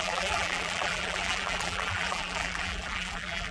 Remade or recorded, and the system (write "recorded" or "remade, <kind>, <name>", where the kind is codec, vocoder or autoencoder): remade, vocoder, BigVGAN v2